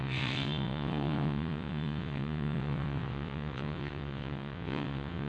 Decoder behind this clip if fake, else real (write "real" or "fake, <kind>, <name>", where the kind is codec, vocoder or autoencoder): fake, vocoder, WaveNeXt